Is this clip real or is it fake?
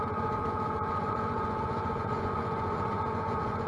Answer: fake